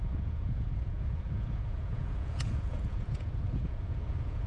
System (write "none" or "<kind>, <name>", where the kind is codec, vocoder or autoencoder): vocoder, Vocos